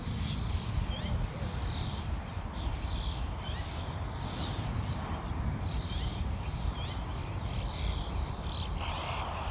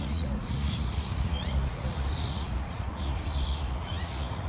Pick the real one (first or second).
first